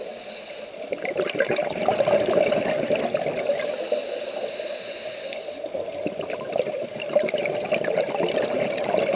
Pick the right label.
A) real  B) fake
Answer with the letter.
A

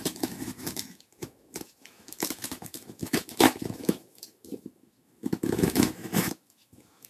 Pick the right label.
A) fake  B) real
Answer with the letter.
A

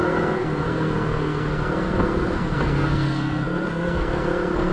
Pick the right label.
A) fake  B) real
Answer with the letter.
A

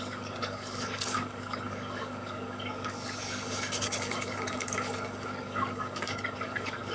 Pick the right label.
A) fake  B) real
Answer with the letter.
A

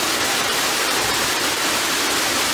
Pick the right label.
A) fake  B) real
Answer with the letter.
A